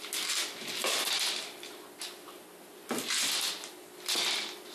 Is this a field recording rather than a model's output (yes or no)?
yes